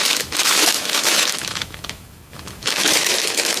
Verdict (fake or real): fake